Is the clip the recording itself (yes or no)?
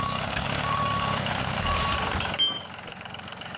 no